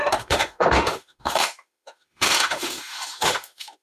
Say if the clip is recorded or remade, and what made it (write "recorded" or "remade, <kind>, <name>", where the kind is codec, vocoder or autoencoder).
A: remade, autoencoder, DAC-VAE